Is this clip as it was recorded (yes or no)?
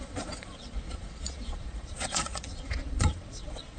no